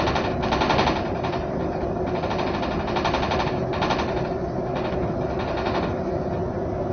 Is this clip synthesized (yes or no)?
no